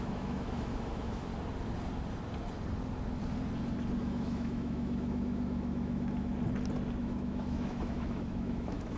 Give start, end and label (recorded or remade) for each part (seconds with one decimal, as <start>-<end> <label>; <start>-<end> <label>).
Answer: 0.0-1.3 remade; 1.3-4.0 recorded; 4.0-6.3 remade; 6.3-7.0 recorded; 7.0-9.0 remade